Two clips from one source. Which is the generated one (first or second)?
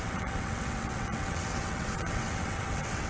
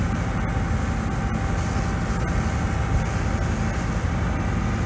first